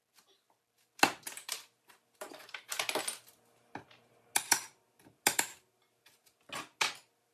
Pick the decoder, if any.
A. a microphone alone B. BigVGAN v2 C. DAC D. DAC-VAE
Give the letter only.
A